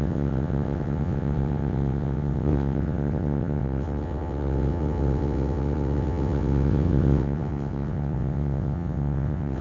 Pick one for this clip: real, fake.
fake